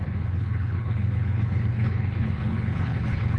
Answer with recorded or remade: remade